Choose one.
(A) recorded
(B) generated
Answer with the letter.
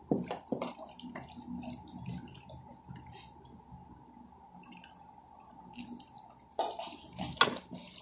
A